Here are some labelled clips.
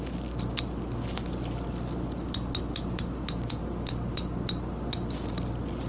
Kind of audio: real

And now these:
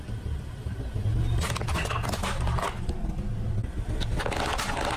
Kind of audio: real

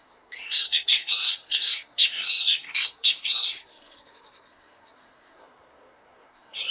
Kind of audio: fake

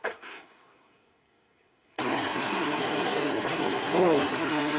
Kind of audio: fake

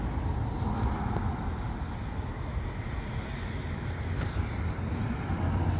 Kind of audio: real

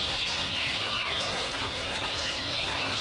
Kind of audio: fake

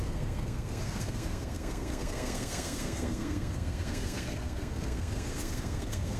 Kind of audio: fake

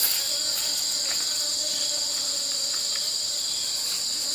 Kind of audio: real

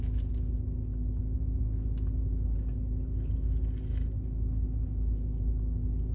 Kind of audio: real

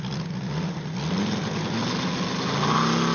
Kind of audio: real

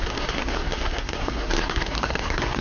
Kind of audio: fake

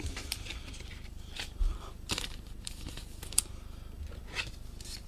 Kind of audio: real